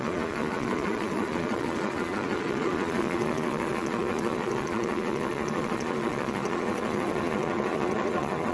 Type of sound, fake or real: fake